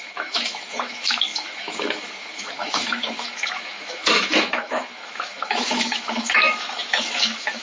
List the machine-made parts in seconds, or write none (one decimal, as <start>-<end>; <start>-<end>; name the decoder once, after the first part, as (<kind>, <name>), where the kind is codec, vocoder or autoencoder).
0.0-7.6 (autoencoder, DAC-VAE)